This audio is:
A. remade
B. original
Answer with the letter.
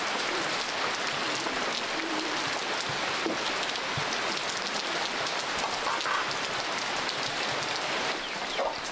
B